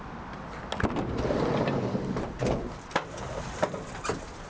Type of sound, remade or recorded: recorded